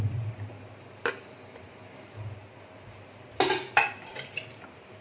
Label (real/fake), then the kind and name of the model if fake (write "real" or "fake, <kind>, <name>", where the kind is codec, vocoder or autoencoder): fake, vocoder, BigVGAN v2